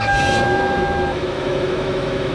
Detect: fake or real fake